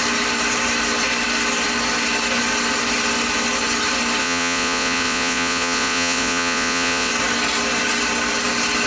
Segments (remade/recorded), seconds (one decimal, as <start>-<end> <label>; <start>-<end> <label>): 0.0-4.2 recorded; 4.2-7.1 remade; 7.1-8.9 recorded